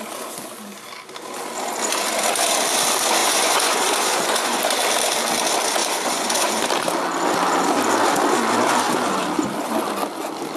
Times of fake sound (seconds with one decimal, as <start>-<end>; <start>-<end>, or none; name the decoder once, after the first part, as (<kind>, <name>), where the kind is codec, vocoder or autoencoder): 3.2-4.6 (vocoder, Vocos); 5.8-6.6